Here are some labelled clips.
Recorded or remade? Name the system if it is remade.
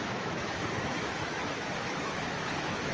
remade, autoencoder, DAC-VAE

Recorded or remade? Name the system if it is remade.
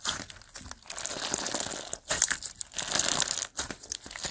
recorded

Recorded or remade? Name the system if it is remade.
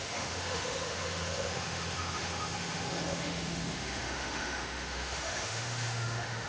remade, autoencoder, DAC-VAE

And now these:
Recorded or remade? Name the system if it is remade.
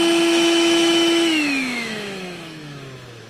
remade, autoencoder, DAC-VAE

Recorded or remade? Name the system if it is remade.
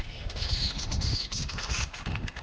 remade, autoencoder, DAC-VAE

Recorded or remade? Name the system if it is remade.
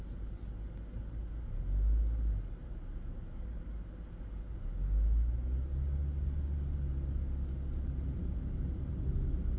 recorded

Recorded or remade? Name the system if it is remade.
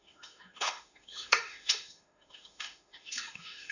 remade, autoencoder, DAC-VAE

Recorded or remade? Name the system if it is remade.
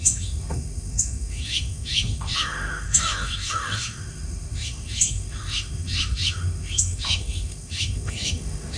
remade, autoencoder, DAC-VAE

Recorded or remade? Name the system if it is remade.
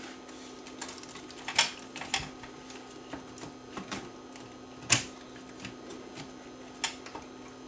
recorded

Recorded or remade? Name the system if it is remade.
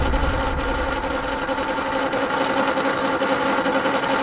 recorded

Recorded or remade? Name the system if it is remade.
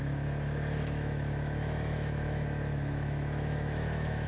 remade, autoencoder, DAC-VAE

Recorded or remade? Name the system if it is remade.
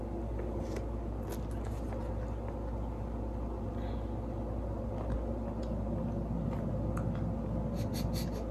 recorded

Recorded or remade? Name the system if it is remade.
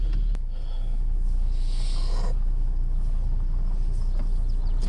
recorded